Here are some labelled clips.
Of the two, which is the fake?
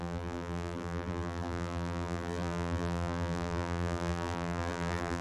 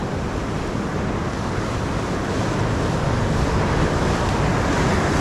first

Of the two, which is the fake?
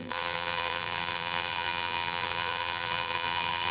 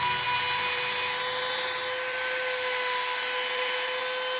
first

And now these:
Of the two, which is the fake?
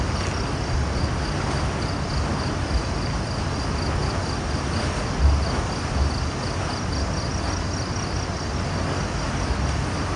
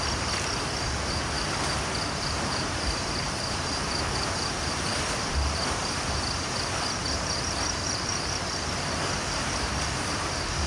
second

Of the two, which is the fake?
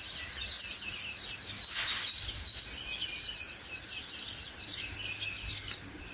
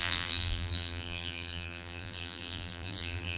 second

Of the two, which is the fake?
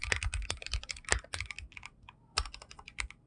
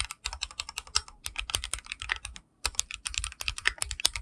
second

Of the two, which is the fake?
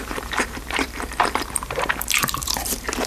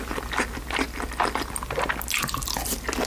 first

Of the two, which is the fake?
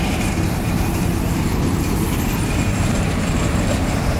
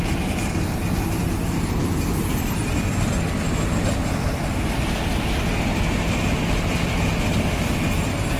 first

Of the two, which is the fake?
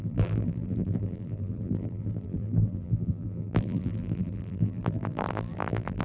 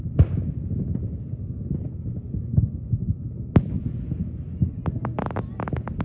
first